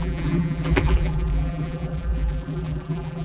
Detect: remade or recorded remade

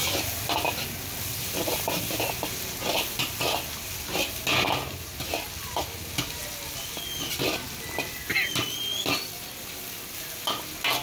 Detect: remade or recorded recorded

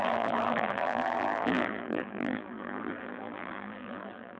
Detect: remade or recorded remade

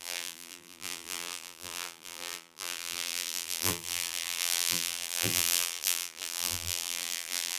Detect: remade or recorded remade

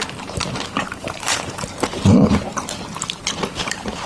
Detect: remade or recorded remade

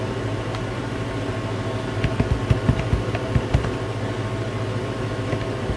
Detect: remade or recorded recorded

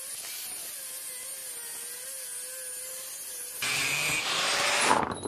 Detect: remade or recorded recorded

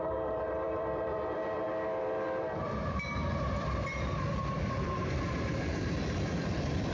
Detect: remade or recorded remade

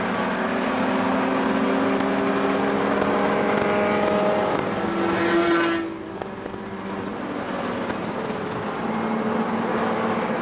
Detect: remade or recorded recorded